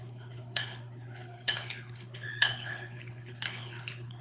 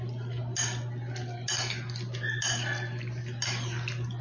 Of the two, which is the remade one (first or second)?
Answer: first